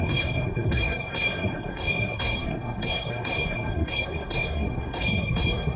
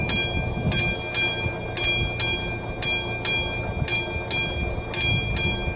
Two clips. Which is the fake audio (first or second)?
first